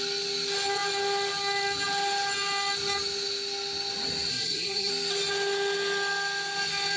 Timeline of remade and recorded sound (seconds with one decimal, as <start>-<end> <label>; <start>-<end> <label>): 0.0-4.3 recorded; 4.3-4.9 remade; 4.9-7.0 recorded